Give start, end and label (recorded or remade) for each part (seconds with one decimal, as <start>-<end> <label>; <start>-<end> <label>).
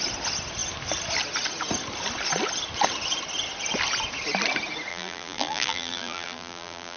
0.0-4.9 recorded; 4.9-7.0 remade